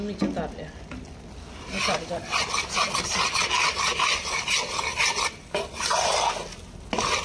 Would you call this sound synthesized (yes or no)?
no